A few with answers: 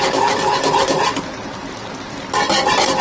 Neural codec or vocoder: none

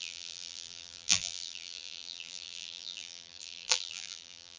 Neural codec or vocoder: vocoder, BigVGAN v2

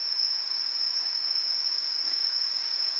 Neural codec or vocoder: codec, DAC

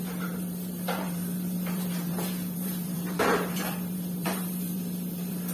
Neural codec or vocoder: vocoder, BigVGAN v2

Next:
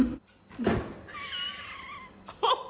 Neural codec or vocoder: none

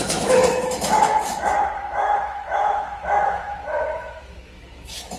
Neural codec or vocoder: autoencoder, DAC-VAE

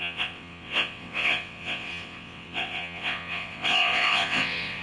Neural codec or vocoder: vocoder, WaveNeXt